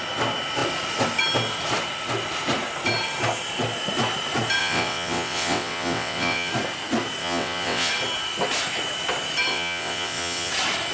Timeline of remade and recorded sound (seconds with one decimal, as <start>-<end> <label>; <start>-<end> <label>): 0.0-4.6 recorded; 4.6-6.5 remade; 6.5-7.2 recorded; 7.2-7.9 remade; 7.9-9.5 recorded; 9.5-10.5 remade; 10.5-10.9 recorded